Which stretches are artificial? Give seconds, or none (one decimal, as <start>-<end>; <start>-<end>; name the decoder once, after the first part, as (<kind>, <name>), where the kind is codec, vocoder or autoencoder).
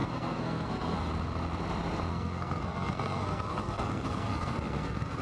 0.0-1.1 (codec, SNAC); 2.1-5.2